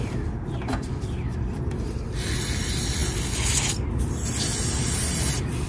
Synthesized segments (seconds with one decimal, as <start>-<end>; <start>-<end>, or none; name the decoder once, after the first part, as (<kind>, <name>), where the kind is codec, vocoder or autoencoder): none